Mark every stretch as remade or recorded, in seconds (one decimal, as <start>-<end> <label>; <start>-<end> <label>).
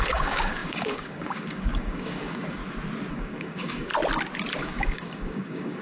0.0-2.6 remade; 2.6-3.1 recorded; 3.1-3.9 remade; 3.9-4.6 recorded; 4.6-5.8 remade